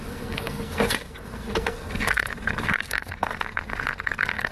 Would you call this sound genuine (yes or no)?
no